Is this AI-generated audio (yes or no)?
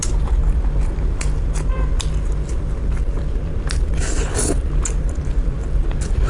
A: yes